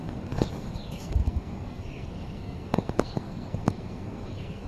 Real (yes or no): no